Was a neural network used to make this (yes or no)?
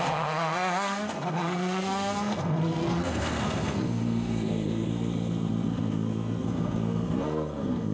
yes